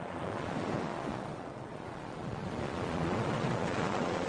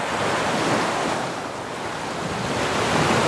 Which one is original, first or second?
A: second